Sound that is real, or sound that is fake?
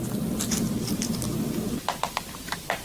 real